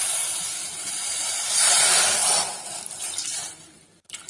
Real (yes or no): no